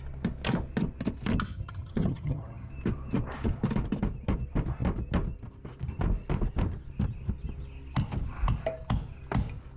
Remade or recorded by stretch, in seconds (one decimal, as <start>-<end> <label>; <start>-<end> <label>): 0.0-1.5 recorded; 1.5-2.7 remade; 2.7-9.8 recorded